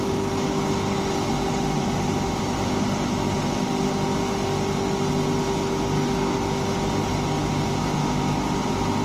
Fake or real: real